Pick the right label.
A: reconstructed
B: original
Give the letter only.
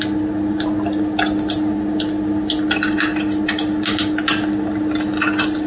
B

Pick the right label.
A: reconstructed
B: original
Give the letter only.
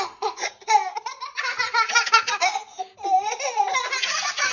B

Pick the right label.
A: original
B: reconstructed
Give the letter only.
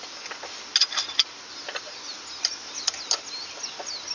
A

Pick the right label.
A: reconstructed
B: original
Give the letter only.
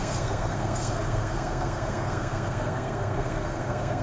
A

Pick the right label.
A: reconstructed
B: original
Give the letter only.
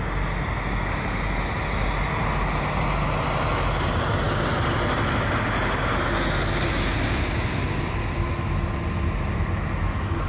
B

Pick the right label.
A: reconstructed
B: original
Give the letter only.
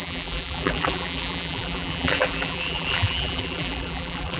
A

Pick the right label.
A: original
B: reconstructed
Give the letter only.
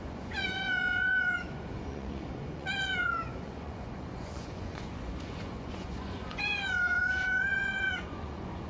B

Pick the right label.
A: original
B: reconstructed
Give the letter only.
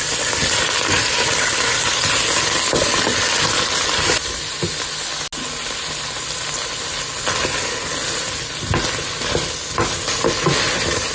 A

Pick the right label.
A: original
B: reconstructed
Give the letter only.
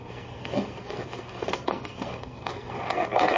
B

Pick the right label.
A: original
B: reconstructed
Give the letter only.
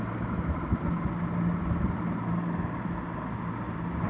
A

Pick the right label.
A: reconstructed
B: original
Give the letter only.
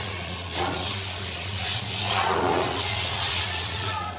A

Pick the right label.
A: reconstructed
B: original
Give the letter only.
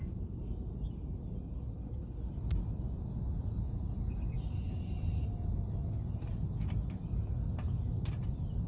B